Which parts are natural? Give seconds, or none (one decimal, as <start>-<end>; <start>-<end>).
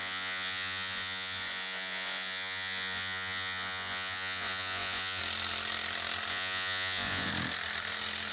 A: 5.2-6.3; 7.3-8.3